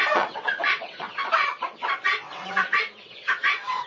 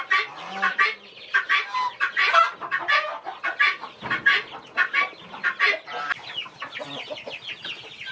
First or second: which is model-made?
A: first